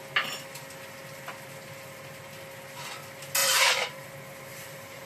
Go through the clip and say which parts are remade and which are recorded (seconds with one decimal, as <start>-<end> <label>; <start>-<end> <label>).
0.0-3.4 recorded; 3.4-4.1 remade; 4.1-4.5 recorded; 4.5-5.1 remade